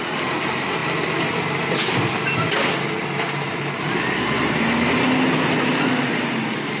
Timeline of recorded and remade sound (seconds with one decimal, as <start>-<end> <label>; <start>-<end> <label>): 0.0-6.8 recorded